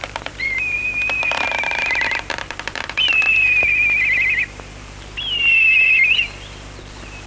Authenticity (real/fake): fake